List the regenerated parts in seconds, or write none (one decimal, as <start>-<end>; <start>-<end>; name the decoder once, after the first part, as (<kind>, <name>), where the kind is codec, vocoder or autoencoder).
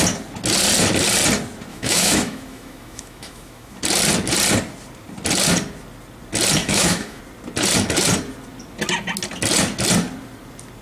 1.7-3.8 (autoencoder, DAC-VAE); 6.6-7.2